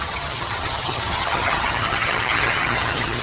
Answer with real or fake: fake